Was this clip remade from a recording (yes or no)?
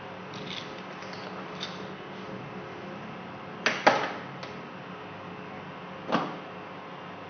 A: no